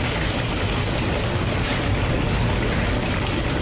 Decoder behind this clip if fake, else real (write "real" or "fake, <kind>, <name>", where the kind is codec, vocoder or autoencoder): real